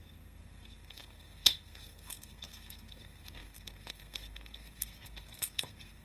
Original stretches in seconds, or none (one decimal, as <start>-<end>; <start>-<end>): none